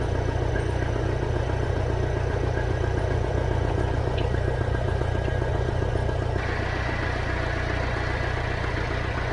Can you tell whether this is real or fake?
fake